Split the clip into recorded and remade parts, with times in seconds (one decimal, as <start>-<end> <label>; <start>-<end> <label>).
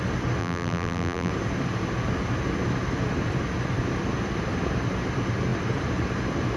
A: 0.0-0.4 recorded; 0.4-1.3 remade; 1.3-6.6 recorded